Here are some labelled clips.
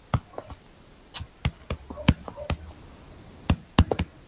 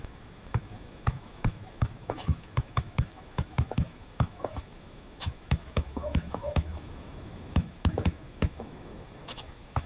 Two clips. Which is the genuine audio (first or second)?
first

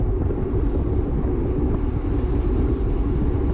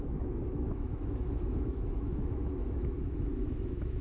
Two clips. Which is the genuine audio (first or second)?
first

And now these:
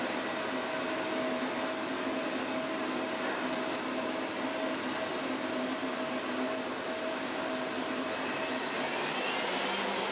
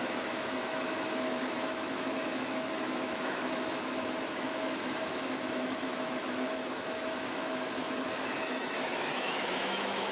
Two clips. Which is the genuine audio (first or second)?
first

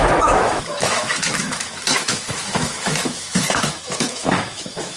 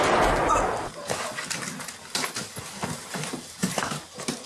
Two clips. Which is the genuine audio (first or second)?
second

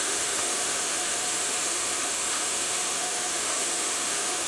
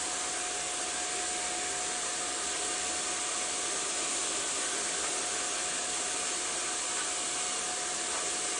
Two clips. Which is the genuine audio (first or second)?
second